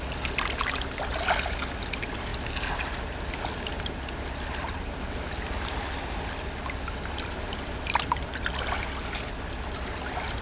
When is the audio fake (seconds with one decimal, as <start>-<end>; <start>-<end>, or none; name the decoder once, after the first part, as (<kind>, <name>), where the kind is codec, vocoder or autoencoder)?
none